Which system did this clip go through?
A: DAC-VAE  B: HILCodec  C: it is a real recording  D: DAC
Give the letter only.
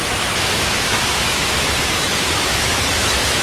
A